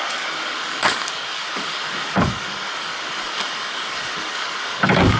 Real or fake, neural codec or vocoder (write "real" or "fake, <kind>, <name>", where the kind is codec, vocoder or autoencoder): fake, codec, DAC